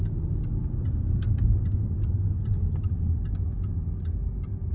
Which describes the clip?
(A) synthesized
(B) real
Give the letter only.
B